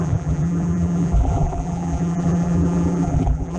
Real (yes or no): no